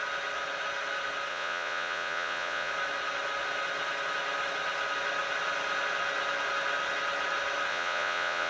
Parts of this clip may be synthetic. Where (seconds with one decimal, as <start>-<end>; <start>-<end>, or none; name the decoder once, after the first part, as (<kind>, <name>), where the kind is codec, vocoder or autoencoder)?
1.3-2.7 (vocoder, Vocos); 7.7-8.5